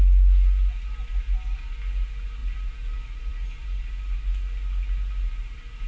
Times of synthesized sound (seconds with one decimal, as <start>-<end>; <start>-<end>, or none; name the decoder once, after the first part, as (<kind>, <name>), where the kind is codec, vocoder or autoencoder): none